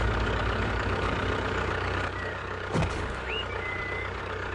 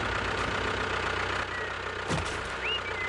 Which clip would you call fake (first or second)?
first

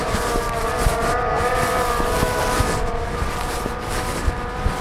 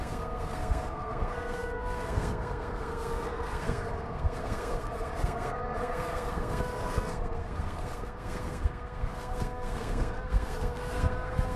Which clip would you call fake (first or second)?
second